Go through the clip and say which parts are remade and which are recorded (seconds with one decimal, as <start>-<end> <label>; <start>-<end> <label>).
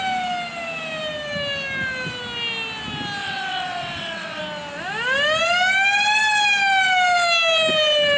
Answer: 0.0-3.2 recorded; 3.2-4.4 remade; 4.4-8.2 recorded